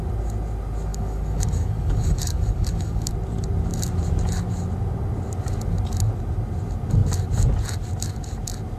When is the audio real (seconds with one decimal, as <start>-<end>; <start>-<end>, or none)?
0.0-0.9; 3.1-8.8